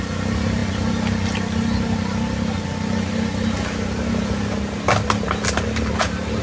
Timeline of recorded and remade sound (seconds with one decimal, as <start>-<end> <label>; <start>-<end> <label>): 0.0-6.4 recorded